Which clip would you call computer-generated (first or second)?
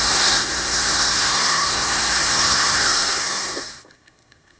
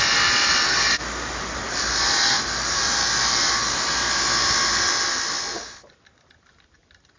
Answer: first